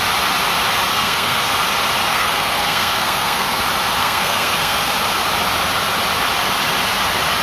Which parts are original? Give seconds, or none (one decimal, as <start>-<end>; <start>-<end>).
0.0-0.9; 1.4-2.1; 3.6-4.0; 4.9-7.4